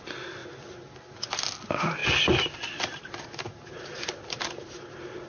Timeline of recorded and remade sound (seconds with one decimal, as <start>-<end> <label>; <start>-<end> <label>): 0.0-5.3 recorded